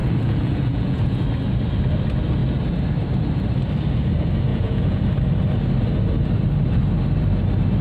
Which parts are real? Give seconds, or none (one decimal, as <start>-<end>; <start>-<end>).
1.2-4.5; 5.0-7.8